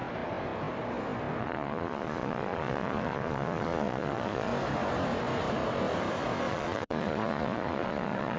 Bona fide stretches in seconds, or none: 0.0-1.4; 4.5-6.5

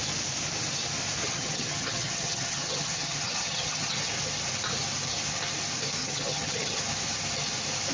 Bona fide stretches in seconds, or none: 0.0-1.2; 4.1-6.0; 6.8-7.9

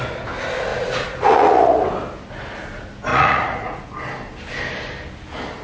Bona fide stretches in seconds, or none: 0.0-0.7; 1.8-3.1; 3.9-5.6

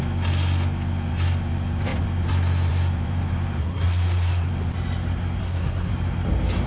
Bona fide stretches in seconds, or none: 0.0-3.6; 4.5-5.4; 5.9-6.7

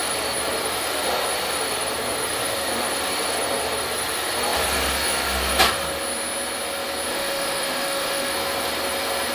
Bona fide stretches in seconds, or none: 0.0-7.1; 8.3-9.3

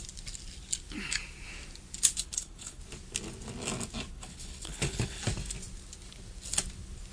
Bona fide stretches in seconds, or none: 0.0-2.2; 2.8-4.1; 5.2-7.1

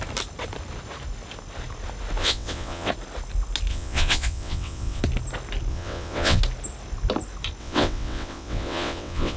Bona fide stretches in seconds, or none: 0.0-2.2; 2.9-3.7; 5.0-5.7; 6.4-7.6